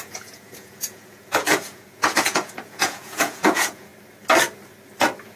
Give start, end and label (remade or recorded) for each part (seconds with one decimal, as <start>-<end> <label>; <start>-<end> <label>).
0.0-3.9 remade; 3.9-5.4 recorded